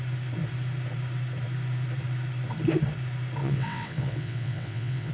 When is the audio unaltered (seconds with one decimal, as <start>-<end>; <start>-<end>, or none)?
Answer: 0.0-3.4